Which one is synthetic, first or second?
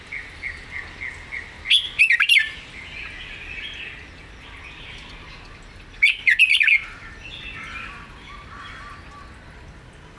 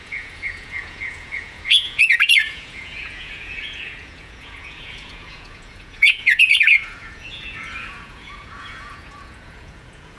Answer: second